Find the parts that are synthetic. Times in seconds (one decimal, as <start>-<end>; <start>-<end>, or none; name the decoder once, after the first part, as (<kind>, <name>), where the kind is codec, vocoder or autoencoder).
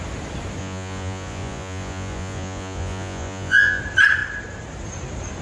0.6-3.8 (vocoder, Vocos)